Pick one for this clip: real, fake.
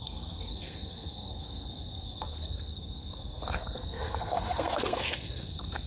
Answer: fake